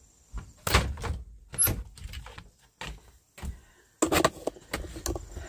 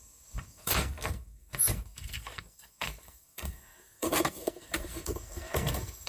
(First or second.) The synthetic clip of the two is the second